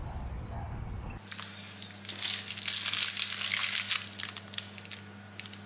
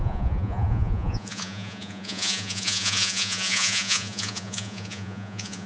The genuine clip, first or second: first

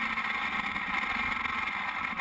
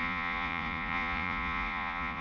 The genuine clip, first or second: first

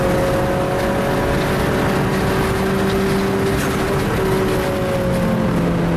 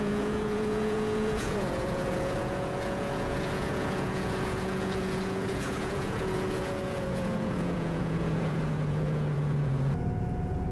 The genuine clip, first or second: first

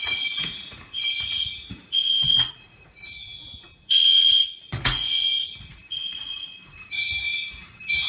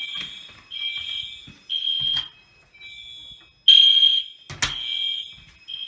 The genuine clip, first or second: second